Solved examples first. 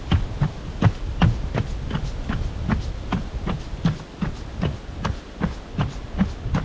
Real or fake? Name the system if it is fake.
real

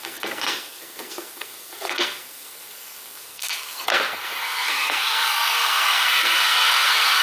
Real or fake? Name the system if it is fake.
fake, codec, SNAC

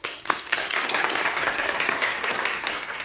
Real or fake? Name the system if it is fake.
fake, codec, SNAC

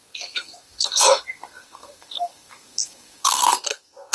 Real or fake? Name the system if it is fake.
fake, codec, SNAC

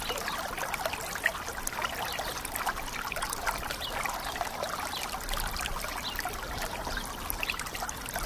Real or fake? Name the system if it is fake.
real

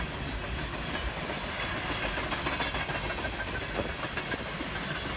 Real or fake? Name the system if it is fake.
real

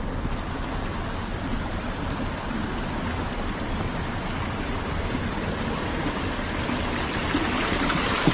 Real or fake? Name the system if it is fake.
real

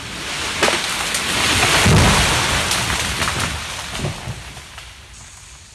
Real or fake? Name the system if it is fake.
real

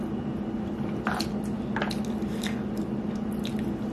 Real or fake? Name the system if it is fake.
real